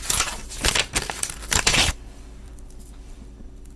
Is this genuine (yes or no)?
no